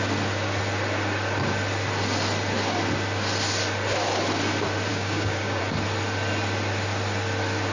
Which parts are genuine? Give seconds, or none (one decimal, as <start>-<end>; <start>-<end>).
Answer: 0.0-4.9; 5.6-7.7